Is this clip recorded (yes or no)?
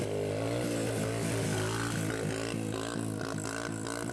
yes